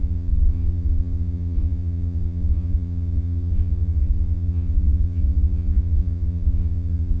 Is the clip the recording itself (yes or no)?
no